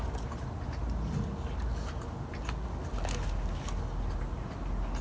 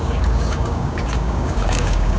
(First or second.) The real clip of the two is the first